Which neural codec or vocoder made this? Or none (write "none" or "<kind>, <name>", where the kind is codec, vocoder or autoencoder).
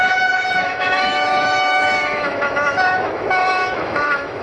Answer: autoencoder, DAC-VAE